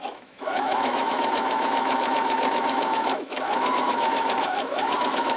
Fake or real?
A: fake